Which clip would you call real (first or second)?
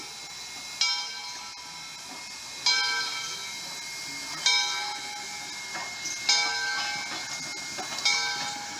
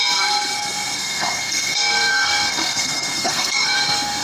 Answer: first